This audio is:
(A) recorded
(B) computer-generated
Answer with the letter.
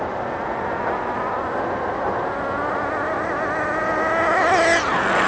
A